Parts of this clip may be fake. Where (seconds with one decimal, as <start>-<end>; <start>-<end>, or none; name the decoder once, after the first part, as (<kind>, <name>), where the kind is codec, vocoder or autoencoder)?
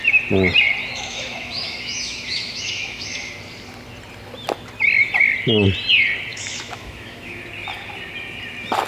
0.8-3.3 (autoencoder, DAC-VAE); 6.3-7.4